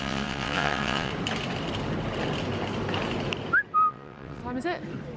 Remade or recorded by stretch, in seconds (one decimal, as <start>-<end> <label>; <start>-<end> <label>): 0.0-1.1 remade; 1.1-3.9 recorded; 3.9-4.4 remade; 4.4-5.2 recorded

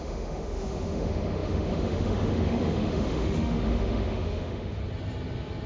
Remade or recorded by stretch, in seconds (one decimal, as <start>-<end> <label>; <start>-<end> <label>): 0.0-4.8 remade; 4.8-5.7 recorded

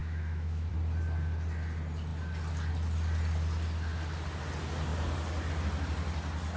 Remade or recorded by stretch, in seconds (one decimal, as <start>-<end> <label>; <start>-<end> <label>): 0.0-0.7 remade; 0.7-6.6 recorded